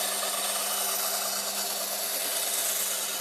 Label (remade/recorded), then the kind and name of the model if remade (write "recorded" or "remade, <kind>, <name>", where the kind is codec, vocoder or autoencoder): recorded